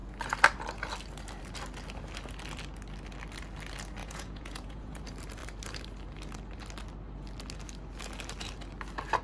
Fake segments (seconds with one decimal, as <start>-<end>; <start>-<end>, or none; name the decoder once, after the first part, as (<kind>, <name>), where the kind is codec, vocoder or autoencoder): 4.0-5.0 (vocoder, Vocos)